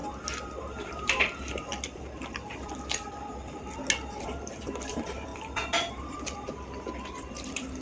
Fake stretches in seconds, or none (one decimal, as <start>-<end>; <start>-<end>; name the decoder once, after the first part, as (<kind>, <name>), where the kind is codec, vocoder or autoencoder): 0.6-1.7 (vocoder, BigVGAN v2); 4.2-5.3; 5.9-7.8